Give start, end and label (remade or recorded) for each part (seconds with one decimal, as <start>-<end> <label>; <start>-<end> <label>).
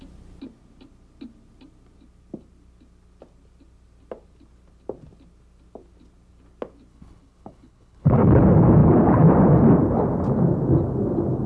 0.0-6.9 recorded; 6.9-8.4 remade; 8.4-8.8 recorded; 8.8-9.3 remade; 9.3-11.5 recorded